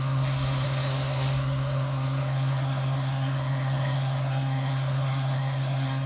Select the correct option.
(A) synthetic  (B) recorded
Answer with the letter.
A